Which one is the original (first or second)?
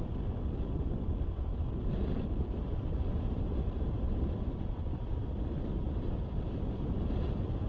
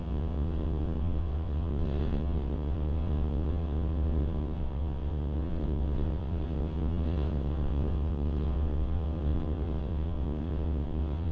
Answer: first